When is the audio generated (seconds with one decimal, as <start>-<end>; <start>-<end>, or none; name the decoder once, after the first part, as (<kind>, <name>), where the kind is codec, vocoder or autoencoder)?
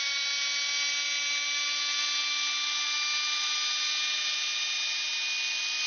none